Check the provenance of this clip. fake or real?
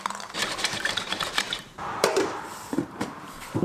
fake